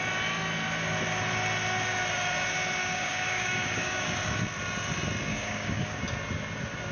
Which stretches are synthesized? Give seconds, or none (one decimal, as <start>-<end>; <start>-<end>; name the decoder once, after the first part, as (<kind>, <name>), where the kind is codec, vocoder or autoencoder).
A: 2.8-4.1 (codec, DAC); 5.3-6.0